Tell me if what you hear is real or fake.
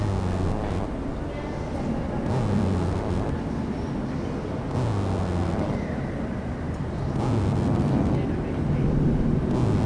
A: real